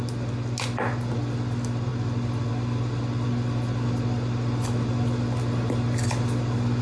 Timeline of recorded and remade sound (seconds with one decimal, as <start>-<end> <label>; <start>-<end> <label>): 0.0-6.8 recorded